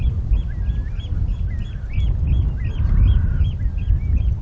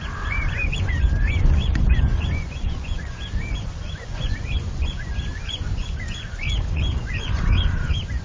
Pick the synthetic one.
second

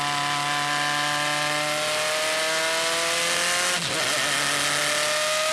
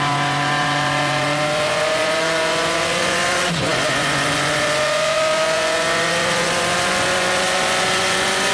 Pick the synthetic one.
second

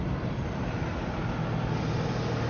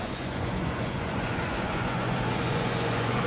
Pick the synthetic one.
second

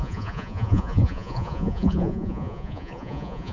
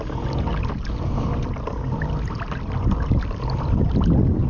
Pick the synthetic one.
first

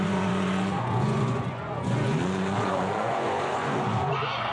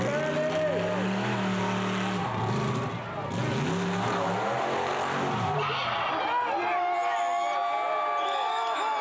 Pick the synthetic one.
first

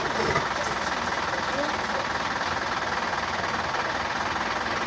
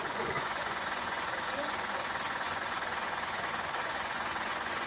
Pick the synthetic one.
second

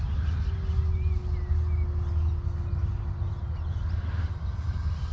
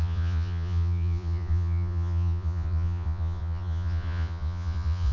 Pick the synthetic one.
second